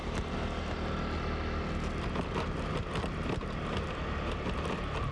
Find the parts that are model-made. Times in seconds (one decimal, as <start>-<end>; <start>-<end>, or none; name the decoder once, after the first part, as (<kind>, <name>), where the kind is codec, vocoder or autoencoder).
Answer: 3.1-5.1 (vocoder, BigVGAN v2)